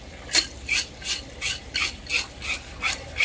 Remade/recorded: recorded